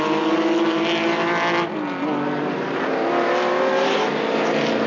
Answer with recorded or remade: recorded